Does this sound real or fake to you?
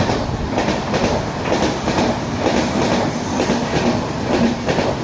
real